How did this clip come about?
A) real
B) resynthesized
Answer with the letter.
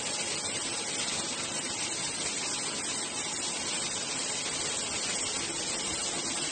A